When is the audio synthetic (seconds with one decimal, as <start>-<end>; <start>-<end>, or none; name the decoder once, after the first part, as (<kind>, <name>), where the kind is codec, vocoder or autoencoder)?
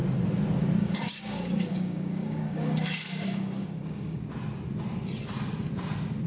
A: 0.8-4.2 (codec, DAC)